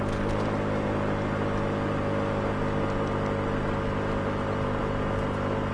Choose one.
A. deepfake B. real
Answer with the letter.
B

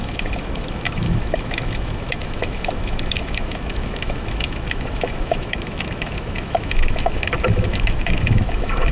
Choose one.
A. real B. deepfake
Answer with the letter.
B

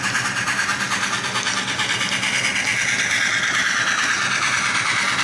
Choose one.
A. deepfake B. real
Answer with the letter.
B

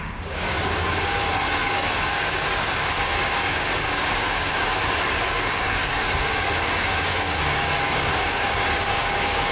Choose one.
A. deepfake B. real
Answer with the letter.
A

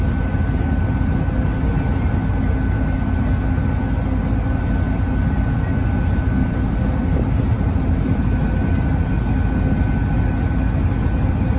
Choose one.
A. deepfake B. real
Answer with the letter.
B